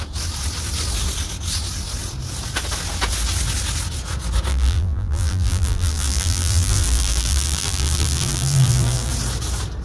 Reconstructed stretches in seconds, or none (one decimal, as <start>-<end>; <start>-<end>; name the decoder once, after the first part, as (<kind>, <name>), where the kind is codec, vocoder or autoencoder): 4.5-9.1 (vocoder, BigVGAN v2)